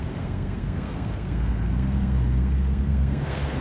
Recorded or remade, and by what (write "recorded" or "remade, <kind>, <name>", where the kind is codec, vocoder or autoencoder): remade, codec, SNAC